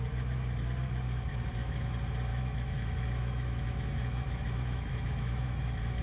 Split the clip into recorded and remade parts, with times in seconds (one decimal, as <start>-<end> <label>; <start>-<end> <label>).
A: 0.0-1.3 recorded; 1.3-1.9 remade; 1.9-2.3 recorded; 2.3-6.0 remade